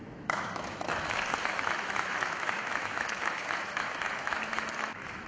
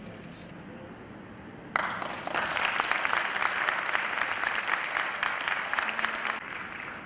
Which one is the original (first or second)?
second